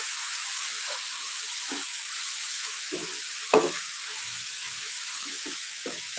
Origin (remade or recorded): remade